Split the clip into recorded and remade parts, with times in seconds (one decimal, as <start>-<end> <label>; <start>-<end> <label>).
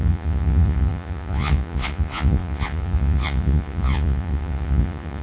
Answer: 0.0-5.2 remade